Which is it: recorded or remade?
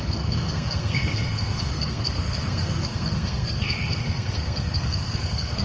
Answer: remade